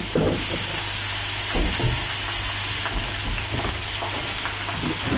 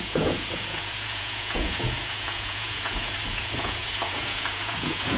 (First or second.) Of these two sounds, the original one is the first